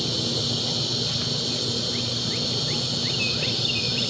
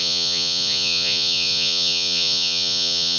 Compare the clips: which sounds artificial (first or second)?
second